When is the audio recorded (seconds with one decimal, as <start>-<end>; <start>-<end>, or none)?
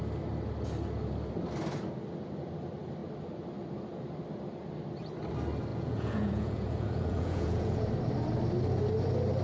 0.0-5.7; 7.9-9.4